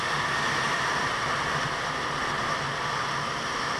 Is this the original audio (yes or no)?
yes